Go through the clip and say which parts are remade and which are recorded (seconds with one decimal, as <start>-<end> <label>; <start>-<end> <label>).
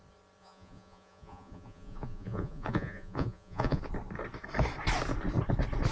0.0-0.4 recorded; 0.4-3.8 remade; 3.8-5.9 recorded